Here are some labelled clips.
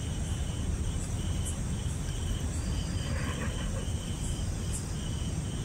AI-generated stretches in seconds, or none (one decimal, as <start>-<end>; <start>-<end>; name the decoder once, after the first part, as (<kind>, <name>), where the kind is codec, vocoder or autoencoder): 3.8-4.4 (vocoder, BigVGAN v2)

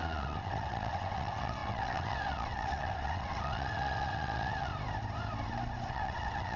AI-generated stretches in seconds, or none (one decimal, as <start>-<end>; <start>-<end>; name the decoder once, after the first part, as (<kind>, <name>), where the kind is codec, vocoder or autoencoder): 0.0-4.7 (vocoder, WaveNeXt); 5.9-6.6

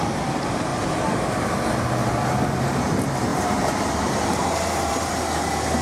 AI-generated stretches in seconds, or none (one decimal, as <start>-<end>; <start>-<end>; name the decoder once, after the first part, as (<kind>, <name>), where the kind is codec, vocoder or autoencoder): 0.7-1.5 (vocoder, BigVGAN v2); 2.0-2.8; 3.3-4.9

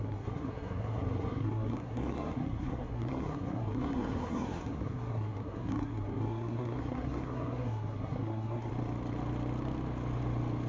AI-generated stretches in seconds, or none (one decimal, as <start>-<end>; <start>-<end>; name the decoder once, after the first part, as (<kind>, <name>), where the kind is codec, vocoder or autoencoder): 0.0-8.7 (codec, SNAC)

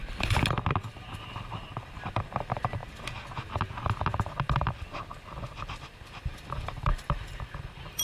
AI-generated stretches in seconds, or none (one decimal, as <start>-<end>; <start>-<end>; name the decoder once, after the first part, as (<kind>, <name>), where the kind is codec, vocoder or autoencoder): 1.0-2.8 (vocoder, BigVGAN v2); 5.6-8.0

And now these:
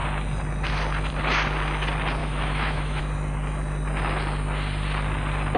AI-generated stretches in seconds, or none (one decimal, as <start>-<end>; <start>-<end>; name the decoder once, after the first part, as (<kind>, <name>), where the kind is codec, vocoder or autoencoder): 2.2-3.0 (autoencoder, DAC-VAE)

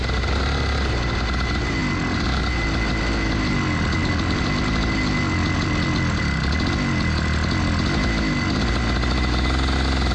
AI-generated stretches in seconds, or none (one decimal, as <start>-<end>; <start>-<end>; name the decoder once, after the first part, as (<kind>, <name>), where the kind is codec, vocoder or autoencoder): none